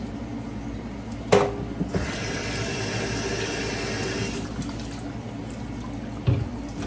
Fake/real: real